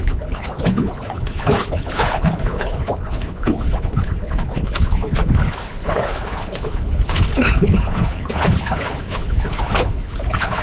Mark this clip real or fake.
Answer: fake